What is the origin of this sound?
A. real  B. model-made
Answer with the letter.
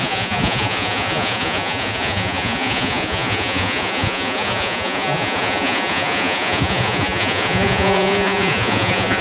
B